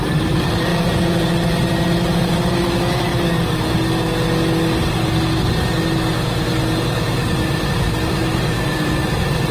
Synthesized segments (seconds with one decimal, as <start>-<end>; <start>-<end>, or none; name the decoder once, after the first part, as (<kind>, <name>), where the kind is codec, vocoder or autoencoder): 0.0-3.1 (vocoder, BigVGAN v2); 6.8-9.5